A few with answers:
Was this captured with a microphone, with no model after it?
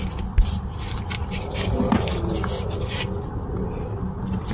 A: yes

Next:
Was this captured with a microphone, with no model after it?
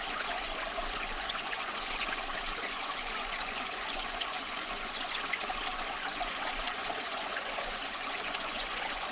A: no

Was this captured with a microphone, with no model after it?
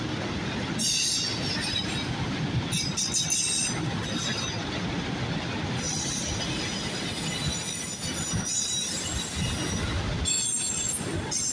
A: yes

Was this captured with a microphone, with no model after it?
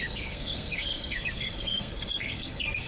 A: no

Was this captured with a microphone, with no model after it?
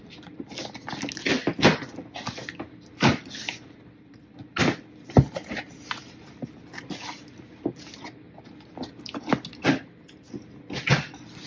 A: yes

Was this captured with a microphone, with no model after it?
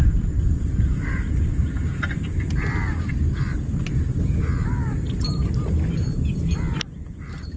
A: yes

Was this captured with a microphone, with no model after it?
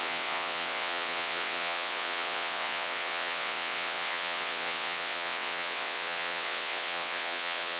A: no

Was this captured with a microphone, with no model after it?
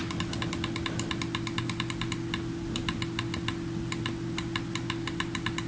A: yes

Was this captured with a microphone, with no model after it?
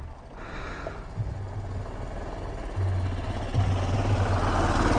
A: yes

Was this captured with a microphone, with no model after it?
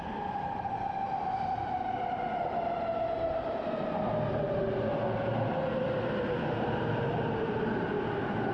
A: yes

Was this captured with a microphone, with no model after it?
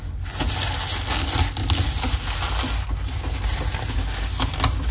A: yes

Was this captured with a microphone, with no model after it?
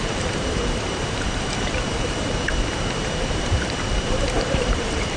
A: no